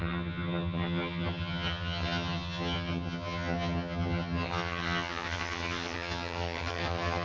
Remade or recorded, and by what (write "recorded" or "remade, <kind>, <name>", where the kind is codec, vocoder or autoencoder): remade, vocoder, HiFi-GAN